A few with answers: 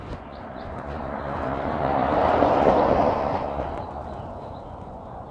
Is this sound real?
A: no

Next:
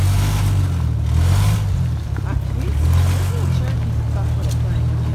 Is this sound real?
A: yes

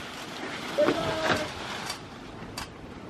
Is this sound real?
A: yes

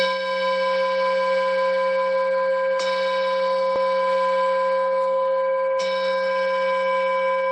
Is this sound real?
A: yes